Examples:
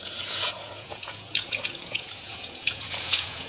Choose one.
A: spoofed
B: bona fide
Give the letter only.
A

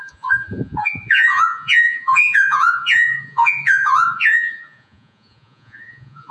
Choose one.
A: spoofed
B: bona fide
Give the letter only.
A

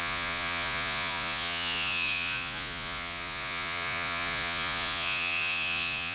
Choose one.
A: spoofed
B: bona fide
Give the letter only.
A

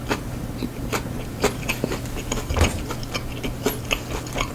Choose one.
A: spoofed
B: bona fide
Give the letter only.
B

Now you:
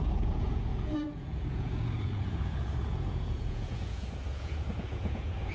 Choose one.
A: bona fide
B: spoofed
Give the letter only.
B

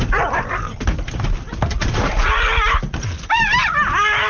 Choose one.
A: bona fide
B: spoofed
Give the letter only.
A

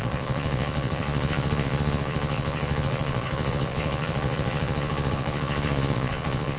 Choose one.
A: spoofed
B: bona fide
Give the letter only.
A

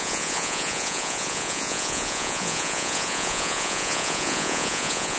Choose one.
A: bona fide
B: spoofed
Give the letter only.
B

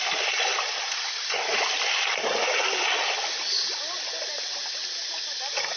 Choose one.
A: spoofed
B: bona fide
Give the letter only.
B